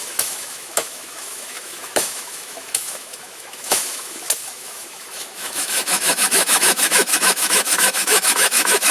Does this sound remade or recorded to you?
remade